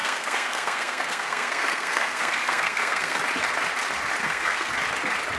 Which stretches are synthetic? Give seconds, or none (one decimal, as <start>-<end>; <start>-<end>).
0.0-3.2; 4.2-4.7